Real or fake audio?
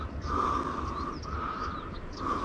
real